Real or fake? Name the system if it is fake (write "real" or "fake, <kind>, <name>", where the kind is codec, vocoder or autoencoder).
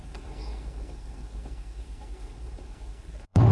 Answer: fake, codec, SNAC